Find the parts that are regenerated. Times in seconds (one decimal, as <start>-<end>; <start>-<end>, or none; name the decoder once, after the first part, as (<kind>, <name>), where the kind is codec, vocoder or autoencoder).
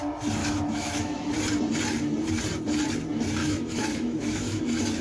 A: 0.4-1.3 (autoencoder, DAC-VAE); 3.4-4.6